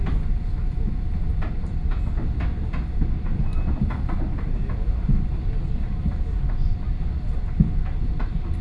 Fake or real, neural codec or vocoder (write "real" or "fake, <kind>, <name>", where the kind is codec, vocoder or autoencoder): real